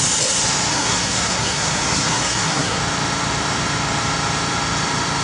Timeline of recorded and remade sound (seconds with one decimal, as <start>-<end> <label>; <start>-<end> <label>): 0.0-0.7 recorded; 0.7-2.8 remade; 2.8-5.2 recorded